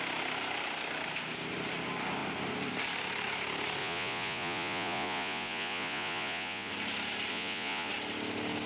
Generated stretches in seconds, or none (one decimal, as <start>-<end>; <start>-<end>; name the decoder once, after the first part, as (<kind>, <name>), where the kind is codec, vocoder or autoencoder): 3.8-6.7 (vocoder, Vocos); 7.3-7.9